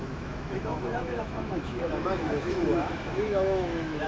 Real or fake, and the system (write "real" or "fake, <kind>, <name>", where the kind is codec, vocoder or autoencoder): fake, autoencoder, DAC-VAE